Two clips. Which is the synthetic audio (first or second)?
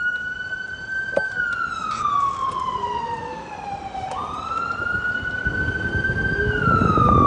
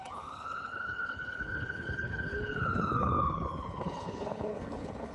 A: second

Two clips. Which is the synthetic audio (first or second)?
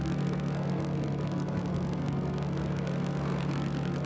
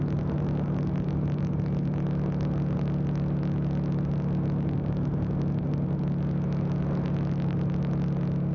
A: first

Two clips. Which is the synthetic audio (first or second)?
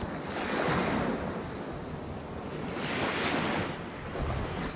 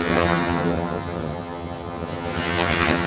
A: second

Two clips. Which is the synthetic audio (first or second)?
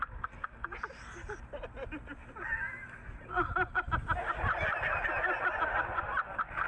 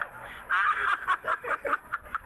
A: second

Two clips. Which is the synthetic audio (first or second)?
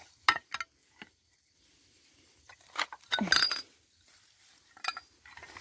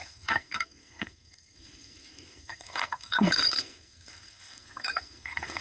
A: second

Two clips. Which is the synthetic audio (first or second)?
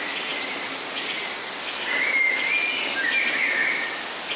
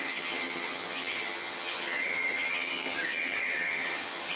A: second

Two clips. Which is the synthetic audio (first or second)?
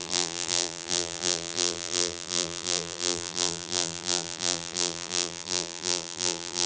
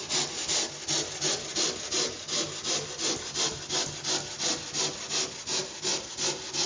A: first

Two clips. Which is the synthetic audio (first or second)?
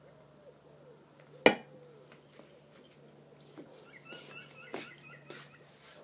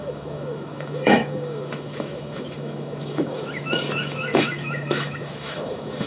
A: second